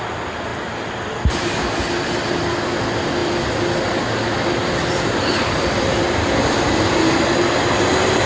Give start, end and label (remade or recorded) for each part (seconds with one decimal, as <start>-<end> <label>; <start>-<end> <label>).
0.0-8.3 recorded